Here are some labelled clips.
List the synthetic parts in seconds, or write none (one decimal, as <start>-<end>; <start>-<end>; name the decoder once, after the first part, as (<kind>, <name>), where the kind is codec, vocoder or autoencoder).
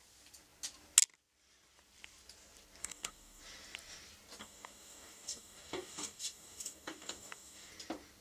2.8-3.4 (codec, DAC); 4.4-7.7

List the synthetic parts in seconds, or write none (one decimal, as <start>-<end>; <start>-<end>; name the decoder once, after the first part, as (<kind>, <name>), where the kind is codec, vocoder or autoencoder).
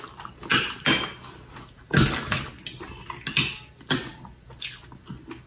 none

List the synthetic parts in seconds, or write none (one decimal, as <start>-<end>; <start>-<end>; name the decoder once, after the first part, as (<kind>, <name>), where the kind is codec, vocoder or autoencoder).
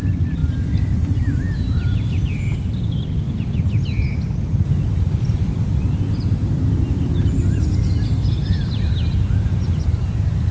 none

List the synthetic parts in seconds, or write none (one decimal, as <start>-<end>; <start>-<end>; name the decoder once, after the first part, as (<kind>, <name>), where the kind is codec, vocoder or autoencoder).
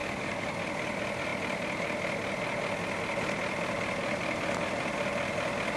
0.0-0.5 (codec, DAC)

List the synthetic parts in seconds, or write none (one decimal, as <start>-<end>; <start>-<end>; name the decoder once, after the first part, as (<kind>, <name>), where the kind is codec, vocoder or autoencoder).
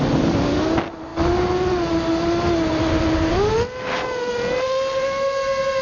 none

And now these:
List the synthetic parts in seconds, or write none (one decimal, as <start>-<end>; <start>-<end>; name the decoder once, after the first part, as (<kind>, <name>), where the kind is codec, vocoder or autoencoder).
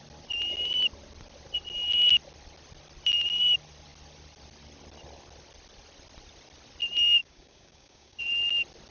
7.2-8.2 (codec, DAC)